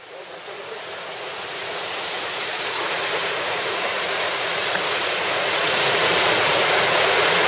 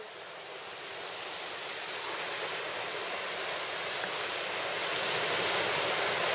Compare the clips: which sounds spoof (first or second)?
first